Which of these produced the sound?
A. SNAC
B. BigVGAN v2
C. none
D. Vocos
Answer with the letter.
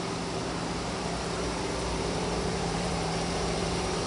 B